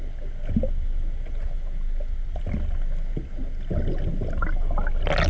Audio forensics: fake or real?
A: real